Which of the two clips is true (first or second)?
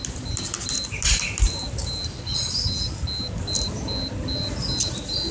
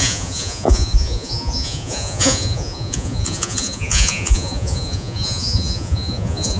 first